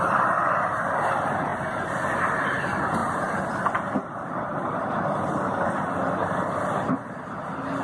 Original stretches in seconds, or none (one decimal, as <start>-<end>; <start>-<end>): 0.0-7.8